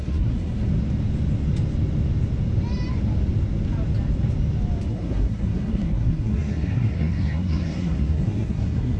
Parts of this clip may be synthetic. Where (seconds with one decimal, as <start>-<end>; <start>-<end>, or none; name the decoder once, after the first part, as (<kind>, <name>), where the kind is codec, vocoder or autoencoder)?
0.0-0.7 (codec, SNAC); 4.9-9.0